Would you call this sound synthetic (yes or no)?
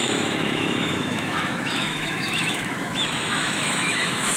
yes